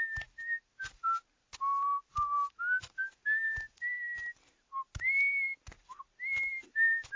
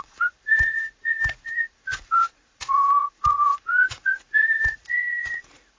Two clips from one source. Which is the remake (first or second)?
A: second